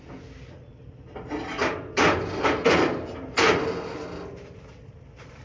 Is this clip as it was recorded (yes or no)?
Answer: yes